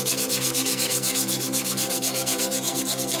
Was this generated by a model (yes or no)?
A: yes